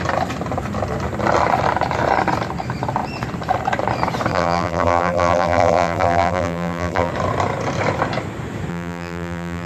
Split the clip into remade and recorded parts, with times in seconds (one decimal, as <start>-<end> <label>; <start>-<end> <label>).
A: 0.0-4.3 recorded; 4.3-7.1 remade; 7.1-8.7 recorded; 8.7-9.7 remade